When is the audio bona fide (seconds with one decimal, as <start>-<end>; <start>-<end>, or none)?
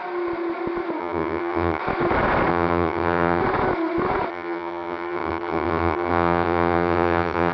0.0-1.0; 1.8-2.5; 3.4-4.3